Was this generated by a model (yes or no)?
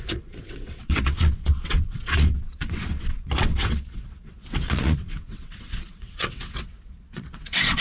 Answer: yes